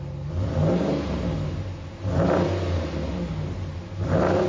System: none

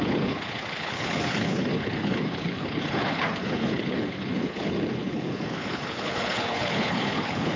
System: codec, HILCodec